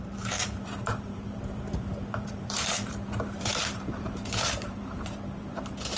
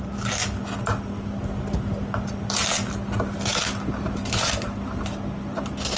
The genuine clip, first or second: second